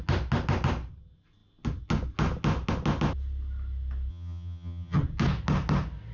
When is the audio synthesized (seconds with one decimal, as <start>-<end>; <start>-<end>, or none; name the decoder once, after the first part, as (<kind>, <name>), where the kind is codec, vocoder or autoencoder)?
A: 4.1-5.0 (vocoder, HiFi-GAN)